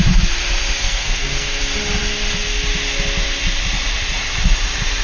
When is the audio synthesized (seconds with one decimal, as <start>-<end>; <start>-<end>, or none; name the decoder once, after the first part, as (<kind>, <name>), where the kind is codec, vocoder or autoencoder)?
0.8-1.6 (codec, SNAC)